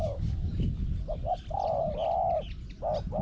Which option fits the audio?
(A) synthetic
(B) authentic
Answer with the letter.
B